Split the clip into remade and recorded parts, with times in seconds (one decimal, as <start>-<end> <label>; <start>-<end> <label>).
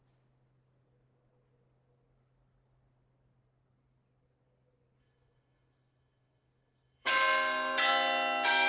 0.0-5.0 recorded; 5.0-7.1 remade; 7.1-8.7 recorded